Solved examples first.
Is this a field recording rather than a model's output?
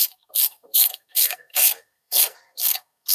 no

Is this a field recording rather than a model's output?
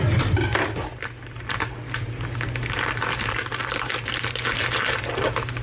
yes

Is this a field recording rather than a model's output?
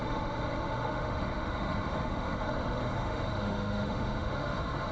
no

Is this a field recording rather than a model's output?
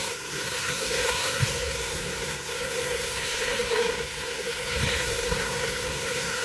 no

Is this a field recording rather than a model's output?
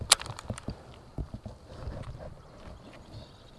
yes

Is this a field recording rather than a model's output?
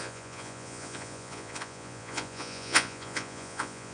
no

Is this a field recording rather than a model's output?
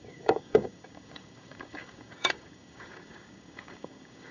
no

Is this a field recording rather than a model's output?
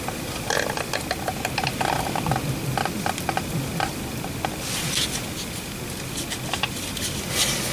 yes